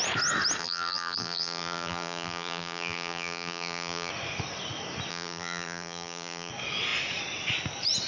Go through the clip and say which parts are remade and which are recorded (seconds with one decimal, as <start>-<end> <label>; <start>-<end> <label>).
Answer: 0.0-0.6 recorded; 0.6-4.1 remade; 4.1-5.1 recorded; 5.1-6.5 remade; 6.5-8.1 recorded